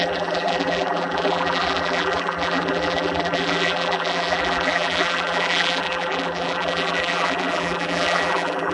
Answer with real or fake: fake